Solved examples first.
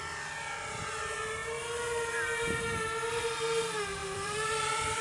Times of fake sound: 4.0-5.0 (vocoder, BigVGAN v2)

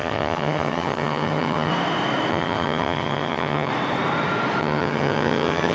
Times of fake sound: 0.0-1.7 (vocoder, HiFi-GAN); 2.3-3.7; 4.6-5.7

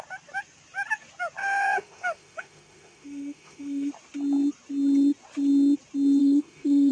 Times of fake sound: 1.4-3.9 (autoencoder, DAC-VAE); 6.2-6.9

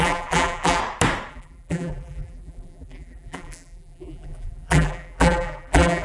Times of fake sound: 0.0-0.8 (vocoder, BigVGAN v2); 1.3-6.0

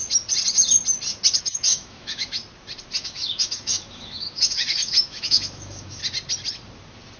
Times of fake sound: 1.4-2.4 (autoencoder, DAC-VAE); 3.0-6.0

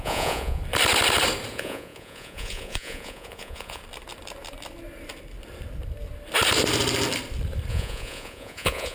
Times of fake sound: 0.0-0.6 (vocoder, Vocos); 1.5-3.8; 7.7-8.9

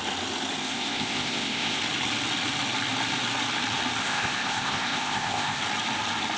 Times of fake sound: 0.6-1.8 (codec, ZipCodec); 4.0-5.6

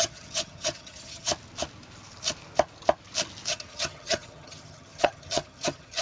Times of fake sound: 0.0-1.3 (vocoder, HiFi-GAN); 3.5-6.0